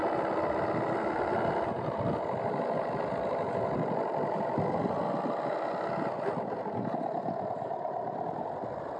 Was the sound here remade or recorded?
recorded